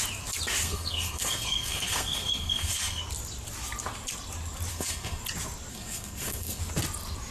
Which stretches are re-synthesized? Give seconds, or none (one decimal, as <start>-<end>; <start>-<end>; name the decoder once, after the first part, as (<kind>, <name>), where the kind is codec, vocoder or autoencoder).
0.6-3.0 (codec, SNAC); 4.7-5.2; 5.7-6.6